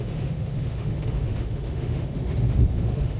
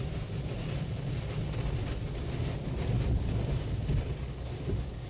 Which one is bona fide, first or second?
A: second